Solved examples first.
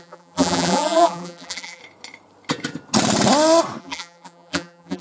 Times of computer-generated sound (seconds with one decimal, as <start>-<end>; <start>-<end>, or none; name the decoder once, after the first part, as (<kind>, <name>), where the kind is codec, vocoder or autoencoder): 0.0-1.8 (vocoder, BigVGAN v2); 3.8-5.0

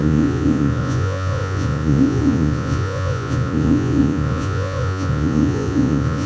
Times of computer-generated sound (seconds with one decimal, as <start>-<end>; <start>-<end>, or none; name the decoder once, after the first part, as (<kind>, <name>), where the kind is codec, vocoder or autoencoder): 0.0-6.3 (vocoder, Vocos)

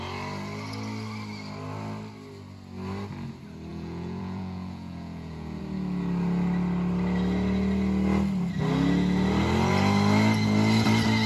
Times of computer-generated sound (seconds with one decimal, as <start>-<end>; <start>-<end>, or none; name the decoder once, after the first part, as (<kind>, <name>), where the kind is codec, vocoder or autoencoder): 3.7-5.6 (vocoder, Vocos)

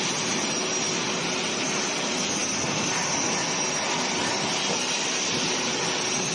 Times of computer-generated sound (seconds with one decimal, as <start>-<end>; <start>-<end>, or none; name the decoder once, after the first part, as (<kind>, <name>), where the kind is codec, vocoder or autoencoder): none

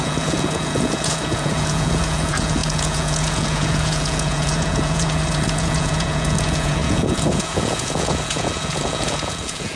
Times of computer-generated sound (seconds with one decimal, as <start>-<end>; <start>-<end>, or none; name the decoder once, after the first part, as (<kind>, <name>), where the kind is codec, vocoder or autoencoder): 0.0-9.8 (vocoder, Vocos)

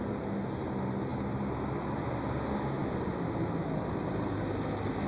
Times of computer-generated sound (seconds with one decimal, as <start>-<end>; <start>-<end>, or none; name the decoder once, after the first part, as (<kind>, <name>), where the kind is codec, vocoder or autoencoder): none

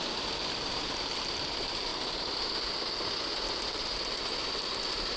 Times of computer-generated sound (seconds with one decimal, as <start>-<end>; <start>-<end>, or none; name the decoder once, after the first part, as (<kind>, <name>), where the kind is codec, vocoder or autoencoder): 0.0-1.9 (vocoder, BigVGAN v2); 3.7-5.2